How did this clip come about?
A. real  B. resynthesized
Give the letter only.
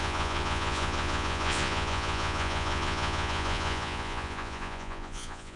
B